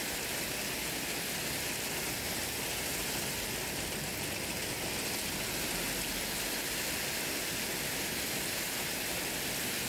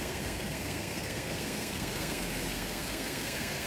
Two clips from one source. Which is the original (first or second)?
first